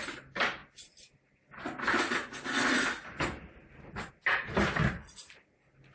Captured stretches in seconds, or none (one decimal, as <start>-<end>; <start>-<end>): 4.8-5.4